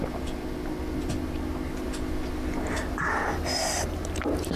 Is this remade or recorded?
recorded